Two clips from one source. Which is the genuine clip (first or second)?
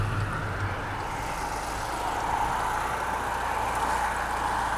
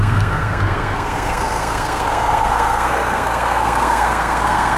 first